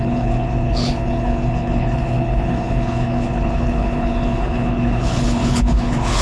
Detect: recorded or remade remade